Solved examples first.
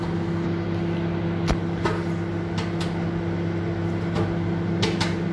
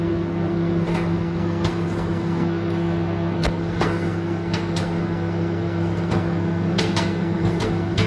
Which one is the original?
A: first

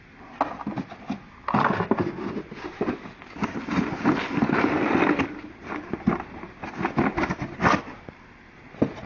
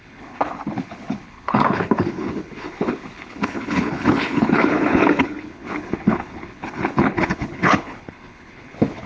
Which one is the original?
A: first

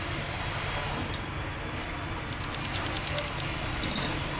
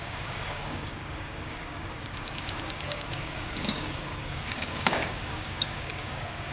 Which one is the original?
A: first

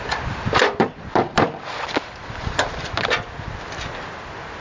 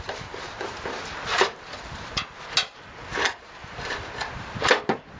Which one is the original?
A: second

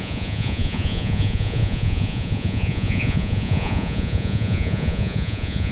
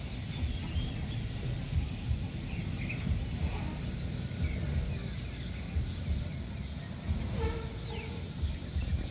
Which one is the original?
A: second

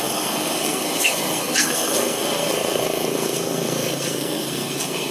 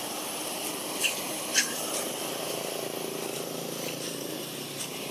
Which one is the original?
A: second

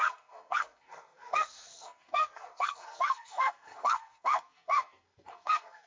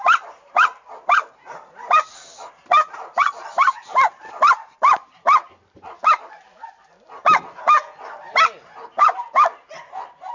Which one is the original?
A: second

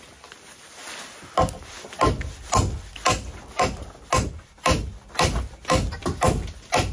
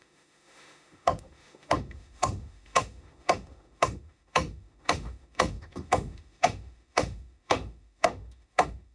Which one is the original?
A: first